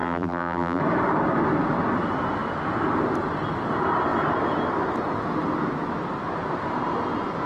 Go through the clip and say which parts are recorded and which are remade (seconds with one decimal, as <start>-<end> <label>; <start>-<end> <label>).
0.0-0.8 remade; 0.8-7.5 recorded